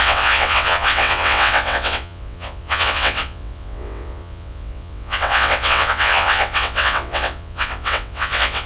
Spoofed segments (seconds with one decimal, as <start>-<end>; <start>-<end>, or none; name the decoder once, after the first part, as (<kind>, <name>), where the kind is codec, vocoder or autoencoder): 0.0-8.7 (vocoder, WaveNeXt)